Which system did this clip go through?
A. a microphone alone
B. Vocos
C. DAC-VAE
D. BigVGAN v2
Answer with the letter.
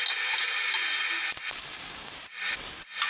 A